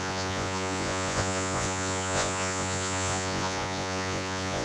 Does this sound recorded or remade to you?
remade